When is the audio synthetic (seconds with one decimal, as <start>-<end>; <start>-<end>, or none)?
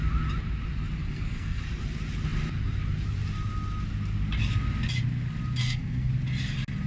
1.0-1.6; 5.6-6.1